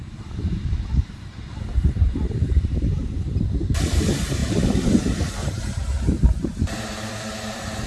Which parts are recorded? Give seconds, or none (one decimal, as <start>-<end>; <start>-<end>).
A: none